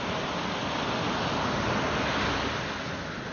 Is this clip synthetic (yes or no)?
no